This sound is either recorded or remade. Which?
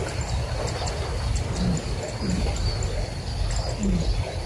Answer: recorded